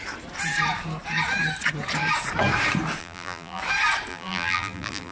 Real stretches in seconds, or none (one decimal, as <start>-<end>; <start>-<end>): 0.0-3.0; 3.6-4.1